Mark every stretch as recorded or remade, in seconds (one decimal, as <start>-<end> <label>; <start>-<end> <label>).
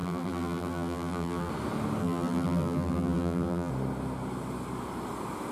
0.0-1.5 remade; 1.5-2.0 recorded; 2.0-3.7 remade; 3.7-5.5 recorded